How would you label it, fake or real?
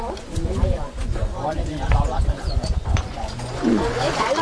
fake